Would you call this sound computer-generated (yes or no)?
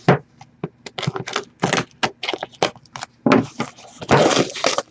no